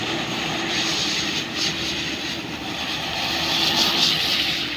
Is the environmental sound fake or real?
fake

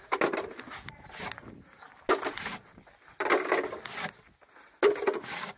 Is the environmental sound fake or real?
real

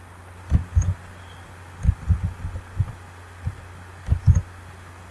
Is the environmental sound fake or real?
real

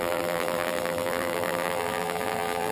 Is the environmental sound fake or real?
fake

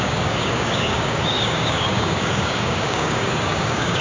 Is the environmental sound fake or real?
fake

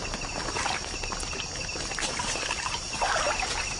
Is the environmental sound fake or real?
real